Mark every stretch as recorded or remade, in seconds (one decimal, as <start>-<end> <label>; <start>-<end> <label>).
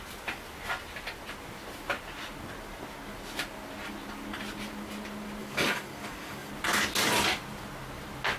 0.0-5.4 recorded; 5.4-6.5 remade; 6.5-8.4 recorded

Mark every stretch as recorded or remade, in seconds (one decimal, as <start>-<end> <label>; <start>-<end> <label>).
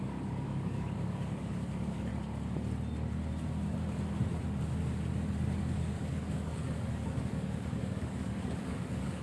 0.0-2.1 remade; 2.1-5.6 recorded; 5.6-9.2 remade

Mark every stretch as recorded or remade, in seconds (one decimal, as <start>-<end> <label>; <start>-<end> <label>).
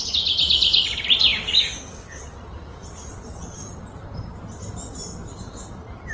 0.0-1.3 recorded; 1.3-2.2 remade; 2.2-6.1 recorded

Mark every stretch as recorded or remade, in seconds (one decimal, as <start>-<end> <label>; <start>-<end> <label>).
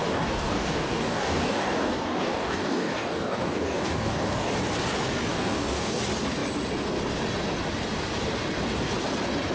0.0-4.5 remade; 4.5-5.3 recorded; 5.3-6.0 remade; 6.0-9.5 recorded